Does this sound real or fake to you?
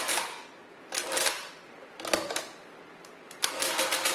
real